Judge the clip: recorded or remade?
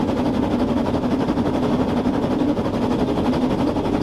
recorded